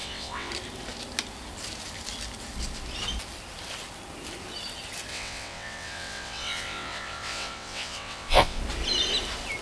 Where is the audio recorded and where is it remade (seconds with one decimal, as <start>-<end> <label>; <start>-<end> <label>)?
0.0-0.5 remade; 0.5-5.1 recorded; 5.1-8.6 remade; 8.6-9.6 recorded

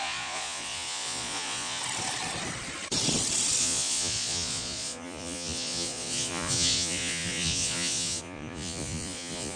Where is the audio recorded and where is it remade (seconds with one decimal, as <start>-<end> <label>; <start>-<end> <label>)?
0.0-1.8 remade; 1.8-3.6 recorded; 3.6-9.6 remade